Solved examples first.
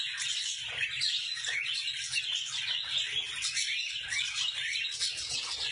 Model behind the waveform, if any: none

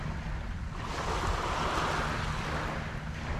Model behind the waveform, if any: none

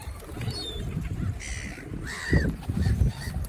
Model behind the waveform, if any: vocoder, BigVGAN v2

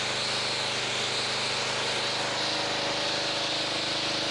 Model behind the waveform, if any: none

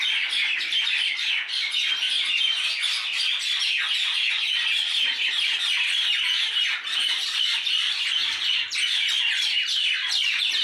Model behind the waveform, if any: vocoder, BigVGAN v2